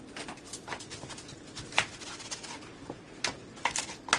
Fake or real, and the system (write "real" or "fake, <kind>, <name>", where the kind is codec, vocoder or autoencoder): real